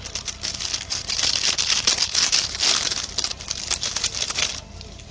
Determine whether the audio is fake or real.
real